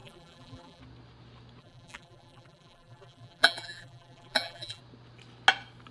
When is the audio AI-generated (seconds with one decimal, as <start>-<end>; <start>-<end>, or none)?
0.0-0.8; 1.6-4.8